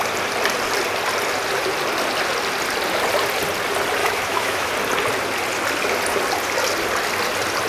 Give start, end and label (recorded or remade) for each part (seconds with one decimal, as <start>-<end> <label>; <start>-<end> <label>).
0.0-4.0 recorded; 4.0-4.7 remade; 4.7-7.7 recorded